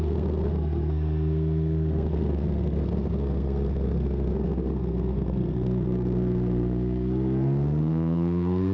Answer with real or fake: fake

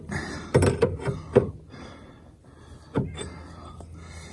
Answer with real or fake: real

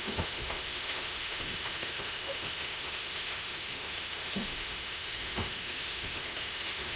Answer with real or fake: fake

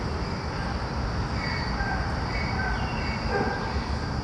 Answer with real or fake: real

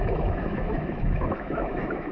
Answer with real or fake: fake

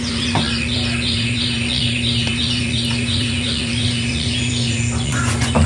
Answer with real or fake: fake